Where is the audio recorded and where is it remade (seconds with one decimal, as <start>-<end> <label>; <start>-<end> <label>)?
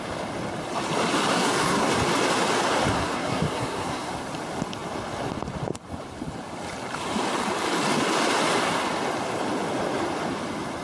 0.0-1.3 recorded; 1.3-1.9 remade; 1.9-2.9 recorded; 2.9-4.1 remade; 4.1-10.8 recorded